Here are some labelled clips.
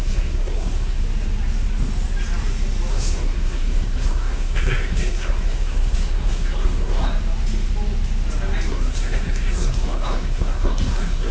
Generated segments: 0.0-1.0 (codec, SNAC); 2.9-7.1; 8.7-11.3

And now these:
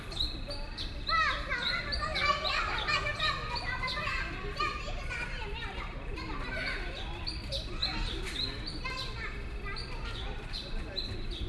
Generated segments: none

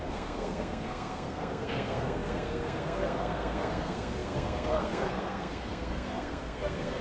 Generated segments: 0.0-7.0 (codec, SNAC)

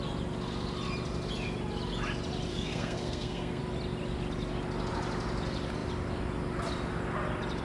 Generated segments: 2.5-3.6 (codec, SNAC)